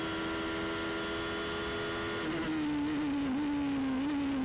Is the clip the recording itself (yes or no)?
yes